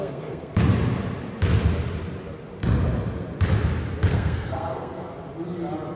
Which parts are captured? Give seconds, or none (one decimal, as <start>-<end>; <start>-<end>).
0.5-4.1; 5.1-6.0